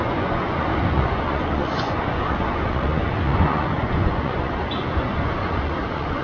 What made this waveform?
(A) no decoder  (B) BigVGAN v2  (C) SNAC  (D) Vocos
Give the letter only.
D